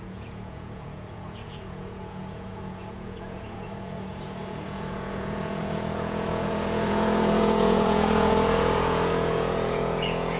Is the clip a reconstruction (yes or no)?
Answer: yes